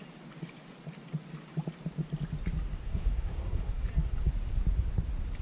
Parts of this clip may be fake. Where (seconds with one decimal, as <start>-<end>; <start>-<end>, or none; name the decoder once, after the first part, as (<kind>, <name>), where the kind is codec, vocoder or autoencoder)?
2.8-3.8 (codec, SNAC)